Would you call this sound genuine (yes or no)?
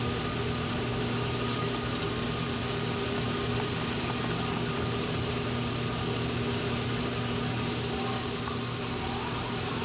yes